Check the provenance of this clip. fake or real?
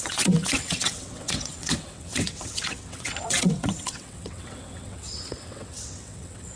fake